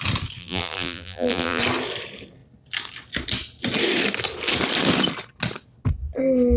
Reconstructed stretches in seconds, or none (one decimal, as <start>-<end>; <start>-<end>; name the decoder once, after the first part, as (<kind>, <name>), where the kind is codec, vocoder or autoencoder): 0.4-1.6 (vocoder, BigVGAN v2)